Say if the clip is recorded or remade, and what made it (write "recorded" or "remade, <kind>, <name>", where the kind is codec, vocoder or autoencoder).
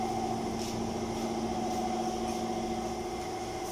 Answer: recorded